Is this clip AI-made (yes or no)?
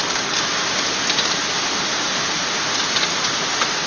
no